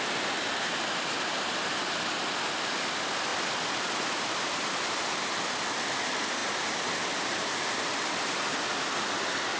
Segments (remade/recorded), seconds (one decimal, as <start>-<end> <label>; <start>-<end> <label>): 0.0-9.6 recorded